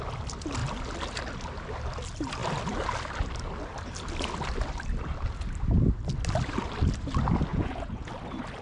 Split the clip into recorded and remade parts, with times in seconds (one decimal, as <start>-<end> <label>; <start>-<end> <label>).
0.0-7.5 recorded; 7.5-8.1 remade; 8.1-8.6 recorded